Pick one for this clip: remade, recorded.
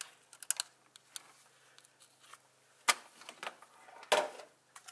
recorded